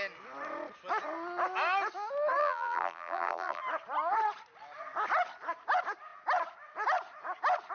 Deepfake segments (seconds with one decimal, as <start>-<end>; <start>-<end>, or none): 2.4-3.6